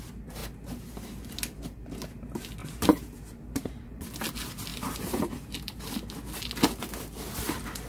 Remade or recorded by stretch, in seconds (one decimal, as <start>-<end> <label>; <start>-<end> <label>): 0.0-2.6 recorded; 2.6-4.1 remade; 4.1-4.7 recorded; 4.7-5.8 remade; 5.8-7.9 recorded